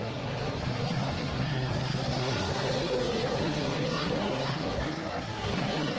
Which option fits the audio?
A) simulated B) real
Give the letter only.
A